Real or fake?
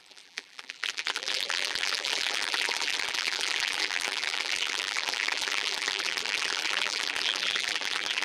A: fake